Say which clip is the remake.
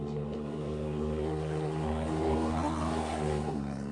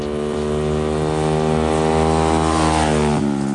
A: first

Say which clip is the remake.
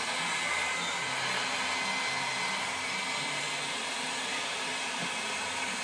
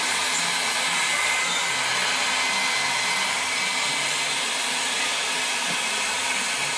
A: second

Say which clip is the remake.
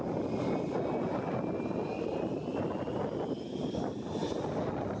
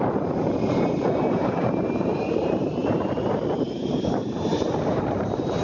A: second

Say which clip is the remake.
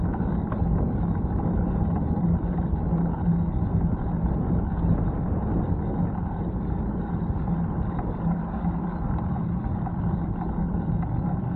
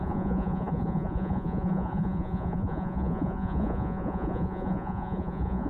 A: second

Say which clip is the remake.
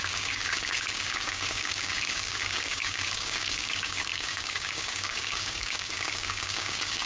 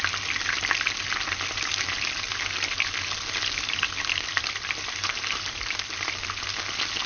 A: first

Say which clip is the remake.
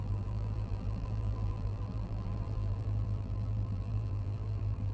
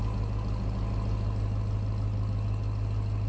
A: first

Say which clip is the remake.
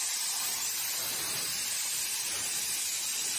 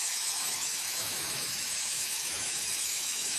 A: second